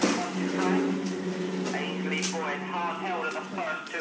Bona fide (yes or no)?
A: yes